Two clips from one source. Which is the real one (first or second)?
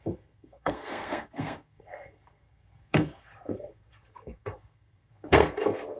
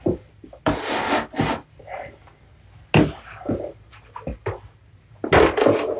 second